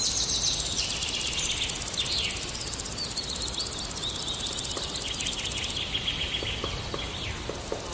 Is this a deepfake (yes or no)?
no